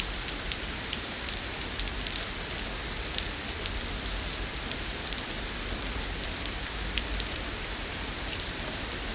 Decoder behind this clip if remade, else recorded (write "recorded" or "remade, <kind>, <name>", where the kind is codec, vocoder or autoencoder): remade, vocoder, BigVGAN v2